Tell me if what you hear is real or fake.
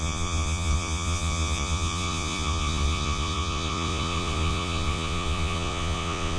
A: fake